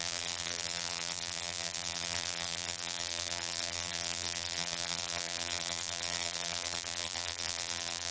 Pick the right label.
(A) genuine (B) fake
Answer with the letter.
B